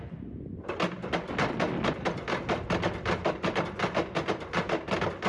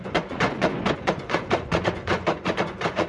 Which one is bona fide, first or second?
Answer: first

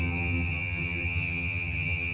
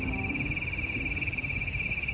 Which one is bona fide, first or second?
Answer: second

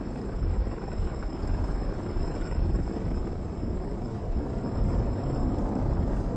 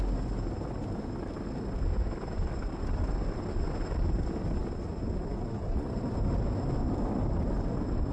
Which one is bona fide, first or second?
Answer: second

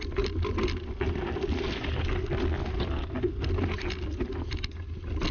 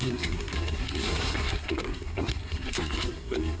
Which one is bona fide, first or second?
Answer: first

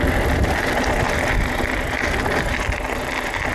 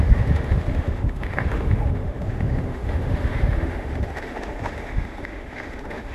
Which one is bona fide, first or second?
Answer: first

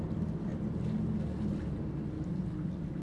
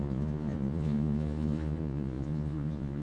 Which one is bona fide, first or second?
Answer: first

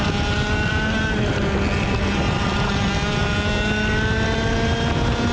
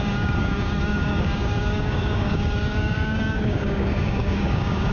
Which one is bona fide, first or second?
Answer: first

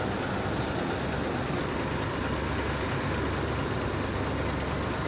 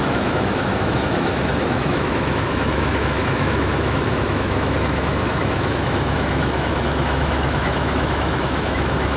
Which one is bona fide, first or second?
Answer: first